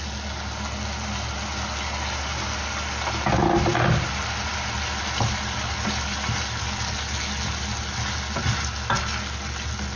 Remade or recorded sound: recorded